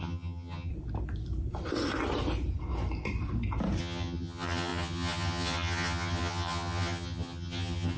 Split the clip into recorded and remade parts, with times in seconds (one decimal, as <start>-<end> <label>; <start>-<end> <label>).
0.0-0.7 remade; 0.7-3.8 recorded; 3.8-8.0 remade

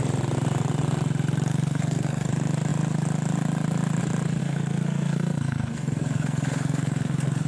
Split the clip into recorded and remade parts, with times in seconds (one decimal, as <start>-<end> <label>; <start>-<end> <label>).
0.0-1.5 recorded; 1.5-2.3 remade; 2.3-4.4 recorded; 4.4-7.5 remade

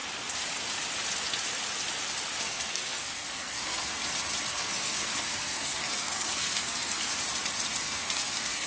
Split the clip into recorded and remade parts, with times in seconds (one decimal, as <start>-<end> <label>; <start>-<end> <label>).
0.0-2.4 recorded; 2.4-4.0 remade; 4.0-4.5 recorded; 4.5-7.1 remade; 7.1-7.8 recorded; 7.8-8.7 remade

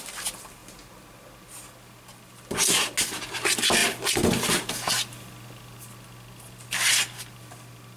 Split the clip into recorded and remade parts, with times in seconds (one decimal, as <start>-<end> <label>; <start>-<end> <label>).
0.0-8.0 recorded

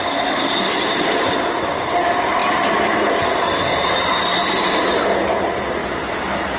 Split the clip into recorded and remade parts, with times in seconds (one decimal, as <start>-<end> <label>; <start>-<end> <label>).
0.0-6.6 recorded

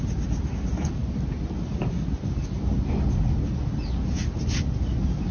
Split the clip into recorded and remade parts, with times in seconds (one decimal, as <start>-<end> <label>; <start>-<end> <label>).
0.0-5.3 recorded

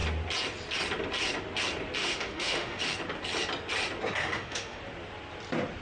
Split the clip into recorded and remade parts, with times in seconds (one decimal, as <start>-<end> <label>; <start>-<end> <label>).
0.0-2.0 recorded; 2.0-2.8 remade; 2.8-4.2 recorded; 4.2-4.8 remade; 4.8-5.8 recorded